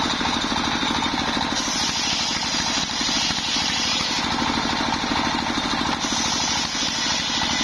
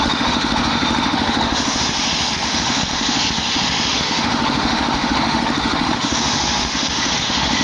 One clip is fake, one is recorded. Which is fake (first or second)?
second